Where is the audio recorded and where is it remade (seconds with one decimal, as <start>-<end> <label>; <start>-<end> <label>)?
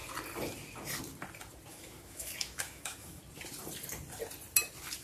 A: 0.0-1.7 recorded; 1.7-3.2 remade; 3.2-5.0 recorded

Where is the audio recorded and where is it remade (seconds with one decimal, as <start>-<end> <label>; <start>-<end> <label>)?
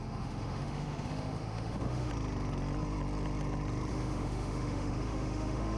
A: 0.0-2.1 remade; 2.1-3.9 recorded; 3.9-5.8 remade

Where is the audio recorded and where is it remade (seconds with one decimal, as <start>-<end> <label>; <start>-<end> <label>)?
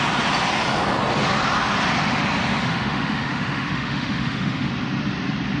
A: 0.0-2.6 recorded; 2.6-4.7 remade; 4.7-5.6 recorded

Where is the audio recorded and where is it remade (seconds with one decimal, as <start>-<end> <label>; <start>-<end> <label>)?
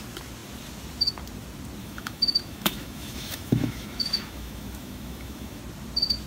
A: 0.0-1.8 recorded; 1.8-5.6 remade; 5.6-6.3 recorded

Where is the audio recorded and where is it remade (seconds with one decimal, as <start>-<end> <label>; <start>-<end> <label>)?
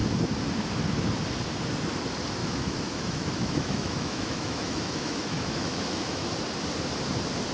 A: 0.0-2.4 recorded; 2.4-6.3 remade; 6.3-7.5 recorded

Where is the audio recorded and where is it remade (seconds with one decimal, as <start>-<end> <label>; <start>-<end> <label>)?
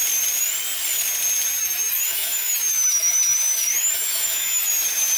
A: 0.0-1.6 recorded; 1.6-4.7 remade; 4.7-5.2 recorded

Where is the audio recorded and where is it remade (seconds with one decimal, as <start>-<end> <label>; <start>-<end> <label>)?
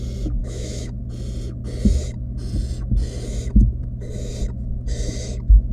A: 0.0-0.4 recorded; 0.4-1.0 remade; 1.0-5.7 recorded